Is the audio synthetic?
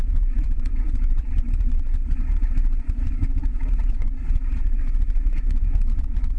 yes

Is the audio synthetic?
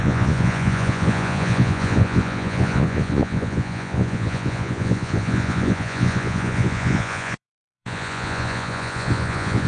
yes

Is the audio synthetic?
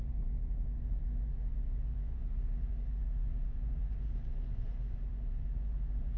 yes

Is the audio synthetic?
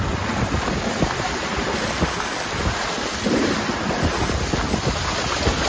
no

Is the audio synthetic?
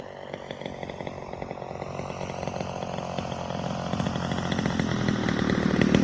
no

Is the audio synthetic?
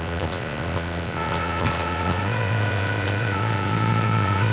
yes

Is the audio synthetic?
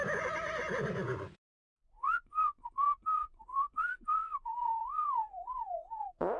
yes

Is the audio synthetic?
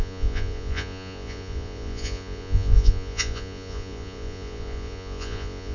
yes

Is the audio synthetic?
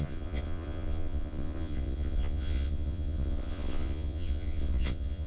yes